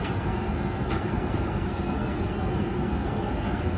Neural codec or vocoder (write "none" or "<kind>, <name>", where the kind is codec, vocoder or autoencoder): codec, SNAC